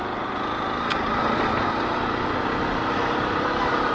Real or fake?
real